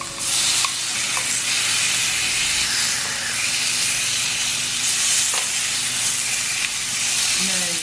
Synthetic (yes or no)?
no